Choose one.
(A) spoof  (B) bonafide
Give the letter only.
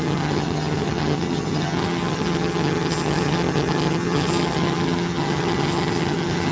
A